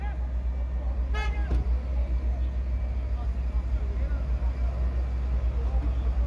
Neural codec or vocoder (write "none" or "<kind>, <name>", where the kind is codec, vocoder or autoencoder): none